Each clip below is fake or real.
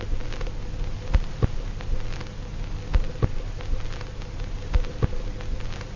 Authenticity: real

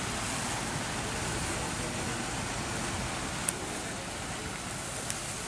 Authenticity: real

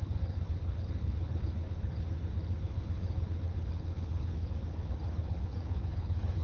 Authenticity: fake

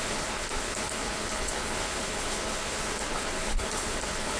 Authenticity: fake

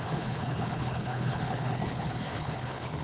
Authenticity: fake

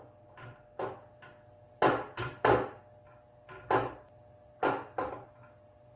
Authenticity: real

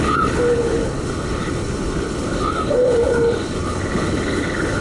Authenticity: fake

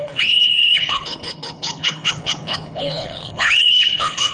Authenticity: fake